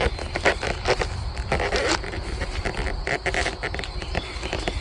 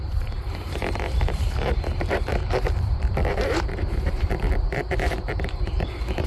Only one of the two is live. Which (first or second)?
first